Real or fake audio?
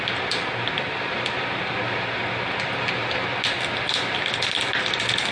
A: real